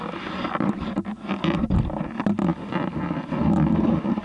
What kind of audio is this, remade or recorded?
recorded